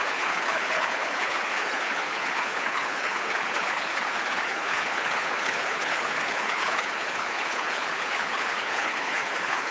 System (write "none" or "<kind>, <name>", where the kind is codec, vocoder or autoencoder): codec, HILCodec